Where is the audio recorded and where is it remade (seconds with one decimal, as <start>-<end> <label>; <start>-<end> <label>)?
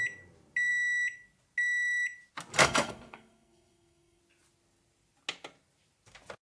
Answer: 0.0-2.6 recorded; 2.6-4.2 remade; 4.2-6.5 recorded